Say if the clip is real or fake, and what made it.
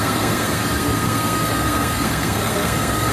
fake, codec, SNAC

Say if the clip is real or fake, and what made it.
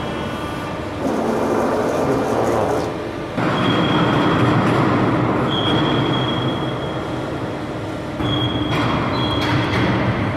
real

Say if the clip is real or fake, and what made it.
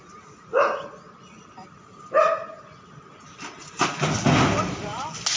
real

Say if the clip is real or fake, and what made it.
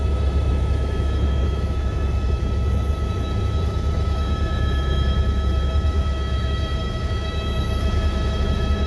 fake, autoencoder, DAC-VAE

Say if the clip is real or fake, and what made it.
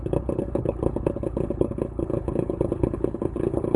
fake, codec, HILCodec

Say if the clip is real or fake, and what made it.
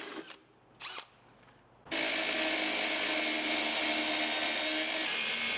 real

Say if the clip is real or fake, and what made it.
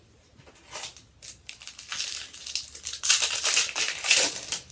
real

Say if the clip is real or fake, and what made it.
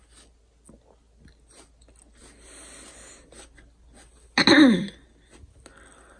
real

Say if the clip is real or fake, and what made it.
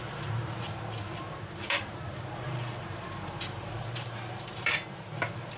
fake, vocoder, BigVGAN v2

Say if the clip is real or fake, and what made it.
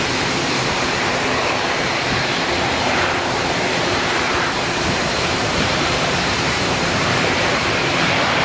fake, vocoder, BigVGAN v2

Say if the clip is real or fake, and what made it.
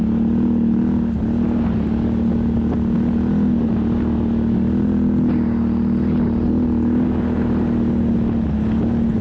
real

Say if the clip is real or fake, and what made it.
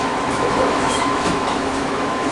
fake, autoencoder, DAC-VAE